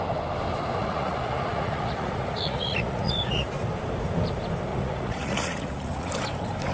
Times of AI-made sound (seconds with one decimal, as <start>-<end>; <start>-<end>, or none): 0.8-3.5; 4.7-6.1

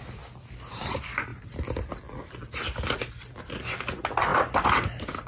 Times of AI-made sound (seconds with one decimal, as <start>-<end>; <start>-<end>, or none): none

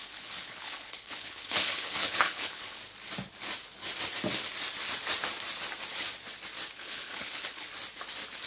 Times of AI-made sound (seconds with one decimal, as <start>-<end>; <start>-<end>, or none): 0.0-2.8; 6.7-7.7

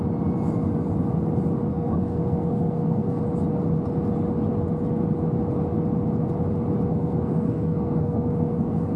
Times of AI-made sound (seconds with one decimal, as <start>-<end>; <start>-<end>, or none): 1.7-3.2; 6.9-9.0

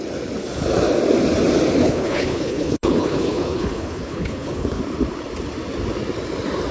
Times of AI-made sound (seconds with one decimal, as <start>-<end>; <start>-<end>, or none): 1.8-4.8

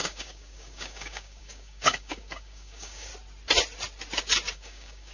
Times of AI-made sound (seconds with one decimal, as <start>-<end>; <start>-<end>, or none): 0.0-3.1; 4.5-5.1